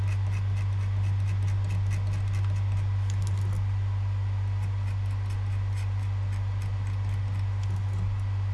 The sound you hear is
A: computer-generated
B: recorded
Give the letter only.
B